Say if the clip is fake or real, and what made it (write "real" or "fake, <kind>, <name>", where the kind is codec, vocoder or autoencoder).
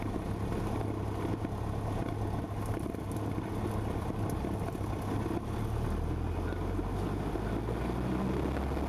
real